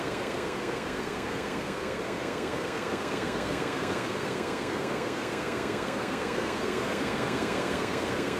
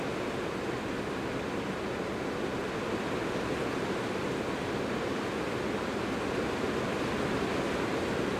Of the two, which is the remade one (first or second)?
first